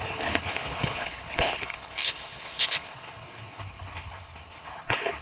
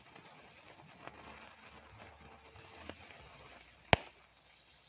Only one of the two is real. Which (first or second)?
second